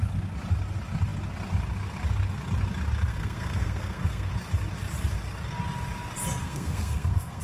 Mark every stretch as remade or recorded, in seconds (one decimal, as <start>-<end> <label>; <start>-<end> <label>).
0.0-3.1 recorded; 3.1-4.3 remade; 4.3-6.4 recorded; 6.4-7.4 remade